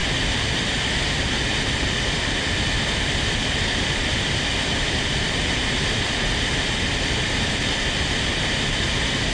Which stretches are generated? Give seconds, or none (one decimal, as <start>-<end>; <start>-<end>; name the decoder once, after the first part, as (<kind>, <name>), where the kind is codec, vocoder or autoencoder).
none